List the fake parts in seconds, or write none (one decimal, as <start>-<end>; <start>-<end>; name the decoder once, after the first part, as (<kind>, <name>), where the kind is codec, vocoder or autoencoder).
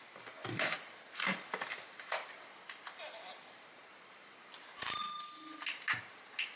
0.4-2.3 (vocoder, BigVGAN v2)